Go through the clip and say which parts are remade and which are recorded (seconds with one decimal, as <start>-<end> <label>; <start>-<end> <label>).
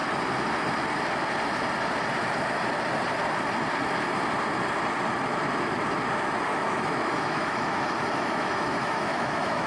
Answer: 0.0-6.5 recorded; 6.5-9.7 remade